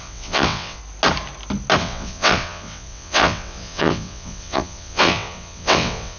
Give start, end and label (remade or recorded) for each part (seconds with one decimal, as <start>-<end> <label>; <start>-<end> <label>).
0.0-0.8 remade; 0.8-1.8 recorded; 1.8-6.2 remade